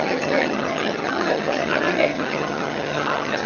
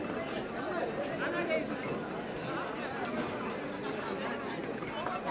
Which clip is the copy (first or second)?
first